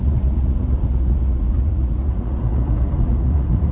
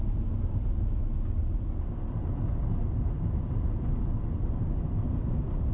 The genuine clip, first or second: second